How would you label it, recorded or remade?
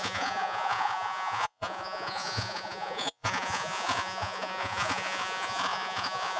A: remade